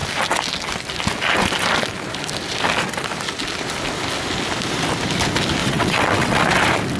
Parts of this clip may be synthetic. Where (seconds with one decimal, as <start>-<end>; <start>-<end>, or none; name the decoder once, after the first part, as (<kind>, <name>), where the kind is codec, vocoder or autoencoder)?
5.6-6.4 (vocoder, WaveNeXt)

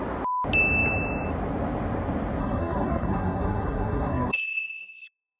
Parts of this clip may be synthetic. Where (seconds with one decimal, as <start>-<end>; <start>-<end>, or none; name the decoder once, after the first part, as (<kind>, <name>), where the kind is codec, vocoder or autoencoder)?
2.4-5.4 (codec, SNAC)